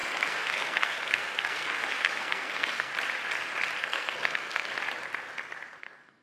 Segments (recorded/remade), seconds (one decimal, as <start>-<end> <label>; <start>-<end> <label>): 0.0-2.9 remade; 2.9-3.8 recorded; 3.8-4.7 remade; 4.7-5.8 recorded; 5.8-6.2 remade